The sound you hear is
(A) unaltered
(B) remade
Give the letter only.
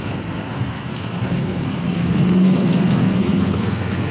B